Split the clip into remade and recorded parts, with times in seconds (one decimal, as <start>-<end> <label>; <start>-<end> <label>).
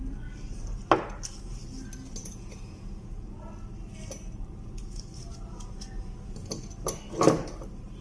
0.0-2.2 recorded; 2.2-3.2 remade; 3.2-8.0 recorded